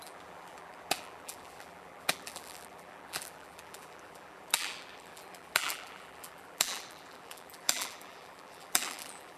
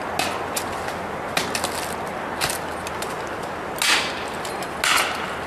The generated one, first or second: first